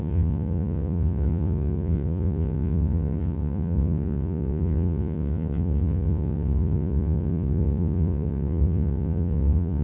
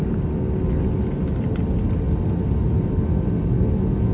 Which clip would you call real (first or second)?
second